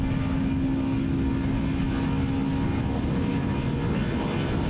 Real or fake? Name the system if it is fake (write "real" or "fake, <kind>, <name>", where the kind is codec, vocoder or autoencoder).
real